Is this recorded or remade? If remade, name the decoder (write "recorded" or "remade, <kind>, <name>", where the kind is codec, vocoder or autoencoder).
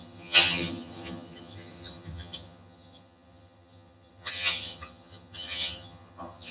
remade, vocoder, HiFi-GAN